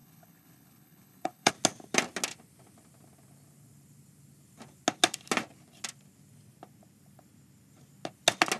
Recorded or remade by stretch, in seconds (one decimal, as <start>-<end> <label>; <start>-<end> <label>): 0.0-1.5 remade; 1.5-8.6 recorded